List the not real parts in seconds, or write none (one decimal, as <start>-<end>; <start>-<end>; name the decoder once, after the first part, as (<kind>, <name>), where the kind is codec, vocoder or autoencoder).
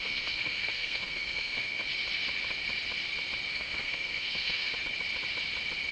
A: 0.0-1.8 (codec, SNAC); 3.5-4.7